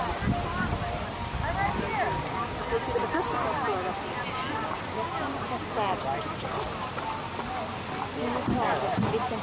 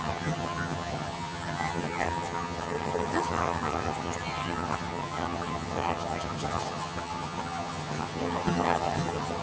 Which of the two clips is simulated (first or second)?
second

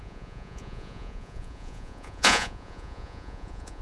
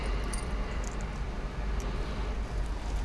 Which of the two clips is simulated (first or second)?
first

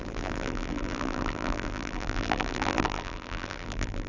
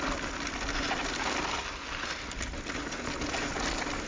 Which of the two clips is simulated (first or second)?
first